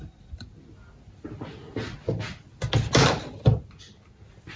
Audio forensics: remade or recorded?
recorded